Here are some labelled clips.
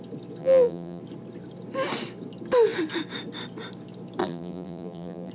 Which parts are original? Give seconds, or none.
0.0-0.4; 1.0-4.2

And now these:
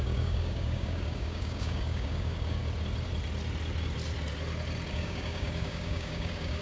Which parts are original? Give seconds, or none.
2.6-4.9

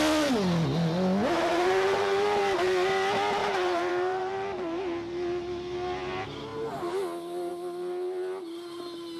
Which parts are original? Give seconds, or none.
0.0-1.5; 2.4-3.4; 4.8-9.2